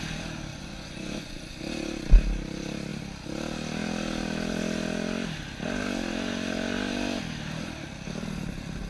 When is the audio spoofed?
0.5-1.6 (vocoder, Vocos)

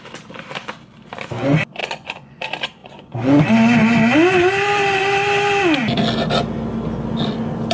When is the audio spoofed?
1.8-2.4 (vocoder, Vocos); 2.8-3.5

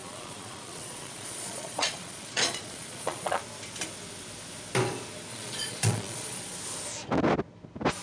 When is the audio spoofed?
0.0-3.4 (vocoder, Vocos); 5.3-6.4

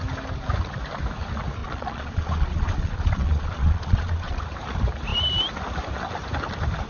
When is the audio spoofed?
1.6-4.4 (vocoder, Vocos)

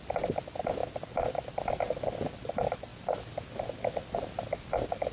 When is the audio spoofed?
none

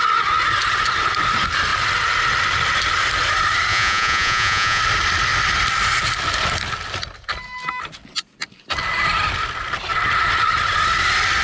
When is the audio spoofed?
3.7-4.8 (vocoder, Vocos)

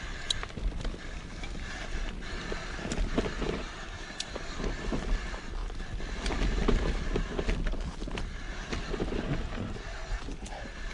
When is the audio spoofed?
none

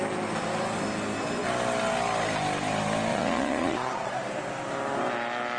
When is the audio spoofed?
3.1-4.1 (vocoder, Vocos)